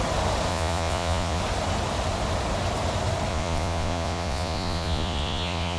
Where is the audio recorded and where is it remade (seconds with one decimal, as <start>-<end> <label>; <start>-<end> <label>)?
0.0-0.5 recorded; 0.5-1.4 remade; 1.4-3.3 recorded; 3.3-5.8 remade